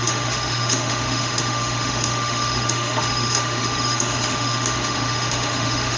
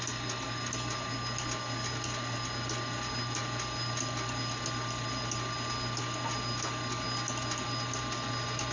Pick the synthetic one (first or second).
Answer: first